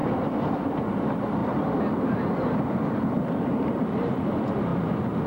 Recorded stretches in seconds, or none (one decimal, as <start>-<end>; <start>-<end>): 0.0-0.9; 1.4-3.7; 4.7-5.3